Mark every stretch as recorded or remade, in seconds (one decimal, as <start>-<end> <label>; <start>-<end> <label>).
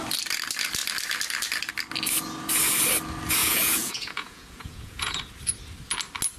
0.0-3.4 recorded; 3.4-5.2 remade; 5.2-6.4 recorded